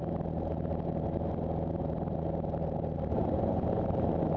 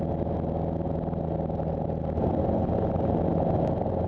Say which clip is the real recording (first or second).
second